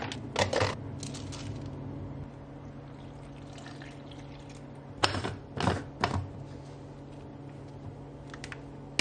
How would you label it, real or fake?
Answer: real